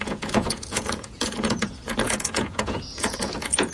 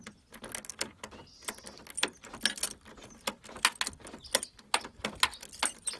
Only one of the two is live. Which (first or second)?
second